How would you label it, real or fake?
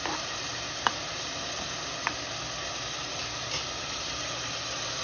real